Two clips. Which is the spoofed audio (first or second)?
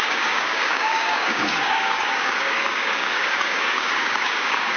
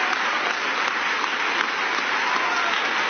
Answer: first